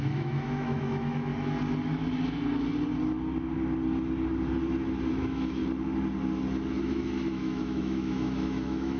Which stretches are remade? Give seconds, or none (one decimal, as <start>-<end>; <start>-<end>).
0.0-1.3; 5.1-5.6; 6.8-9.0